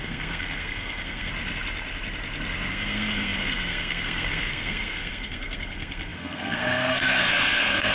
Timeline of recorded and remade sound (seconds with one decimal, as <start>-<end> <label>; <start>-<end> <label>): 0.0-1.3 remade; 1.3-2.7 recorded; 2.7-7.9 remade

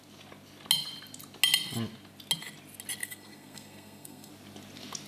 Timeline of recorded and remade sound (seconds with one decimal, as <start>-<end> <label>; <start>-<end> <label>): 0.0-3.0 recorded; 3.0-4.3 remade; 4.3-5.1 recorded